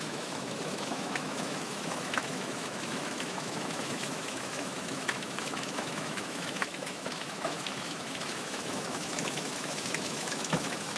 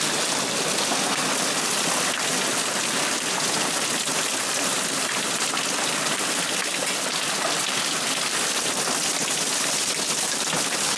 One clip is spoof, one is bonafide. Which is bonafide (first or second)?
second